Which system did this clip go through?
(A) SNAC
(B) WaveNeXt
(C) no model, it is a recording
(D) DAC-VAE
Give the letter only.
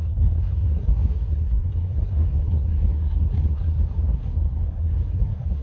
A